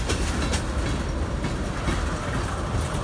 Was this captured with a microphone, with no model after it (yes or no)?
yes